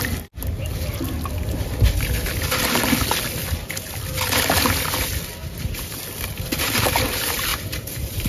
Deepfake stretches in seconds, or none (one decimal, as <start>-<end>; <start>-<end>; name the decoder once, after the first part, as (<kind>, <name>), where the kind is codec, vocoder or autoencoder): 5.4-6.0 (vocoder, BigVGAN v2); 7.5-8.3